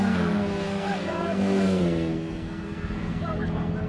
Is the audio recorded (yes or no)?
no